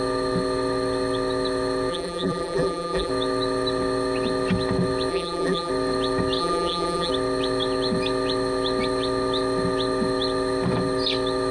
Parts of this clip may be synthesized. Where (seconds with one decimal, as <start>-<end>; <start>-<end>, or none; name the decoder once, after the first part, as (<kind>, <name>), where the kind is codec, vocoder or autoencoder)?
1.9-3.1 (vocoder, BigVGAN v2); 5.1-5.7; 6.4-7.1